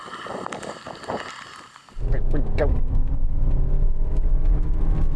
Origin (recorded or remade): recorded